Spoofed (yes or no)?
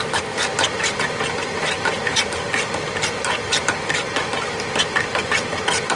no